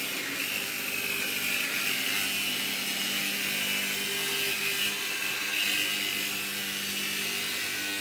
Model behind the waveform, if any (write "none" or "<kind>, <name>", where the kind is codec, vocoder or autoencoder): none